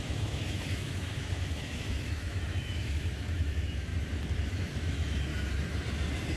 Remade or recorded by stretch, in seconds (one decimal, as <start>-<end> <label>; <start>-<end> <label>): 0.0-3.9 remade; 3.9-4.4 recorded; 4.4-5.3 remade; 5.3-6.4 recorded